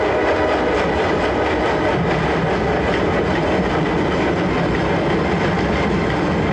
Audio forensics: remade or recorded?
recorded